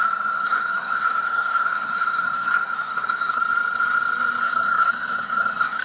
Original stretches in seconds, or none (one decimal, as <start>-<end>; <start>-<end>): 0.0-0.4; 3.4-4.4